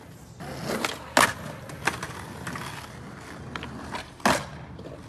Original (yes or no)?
yes